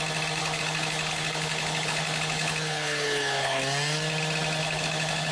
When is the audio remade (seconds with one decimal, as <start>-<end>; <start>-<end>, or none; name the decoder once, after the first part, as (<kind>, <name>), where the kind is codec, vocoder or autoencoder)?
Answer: 0.4-3.6 (codec, HILCodec); 4.6-5.3